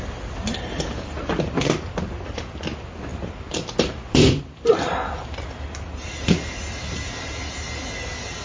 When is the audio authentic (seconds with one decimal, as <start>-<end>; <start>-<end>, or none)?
0.0-8.4